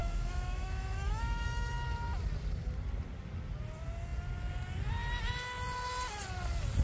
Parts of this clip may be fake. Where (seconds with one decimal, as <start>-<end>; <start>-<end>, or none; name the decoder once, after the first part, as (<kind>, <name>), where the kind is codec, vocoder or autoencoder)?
0.0-1.7 (autoencoder, DAC-VAE)